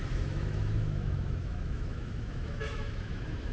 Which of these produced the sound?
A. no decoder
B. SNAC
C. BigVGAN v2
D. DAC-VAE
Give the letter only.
D